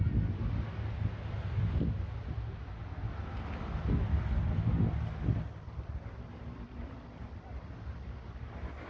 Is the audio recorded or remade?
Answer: recorded